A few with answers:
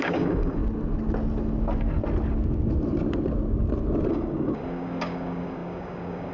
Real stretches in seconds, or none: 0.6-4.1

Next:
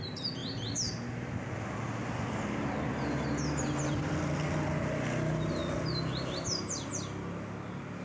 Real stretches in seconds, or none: 0.0-0.4; 2.1-8.0

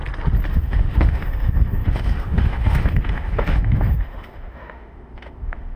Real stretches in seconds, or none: 0.0-0.5

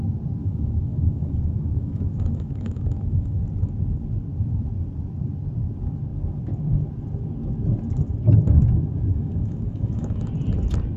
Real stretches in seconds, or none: 0.0-0.4; 3.4-9.1; 10.2-11.0

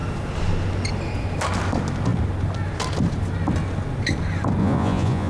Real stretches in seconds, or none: 0.0-4.6

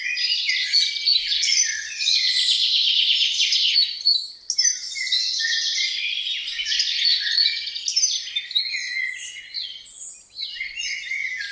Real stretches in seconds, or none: 0.0-1.2; 3.8-6.9; 7.7-11.5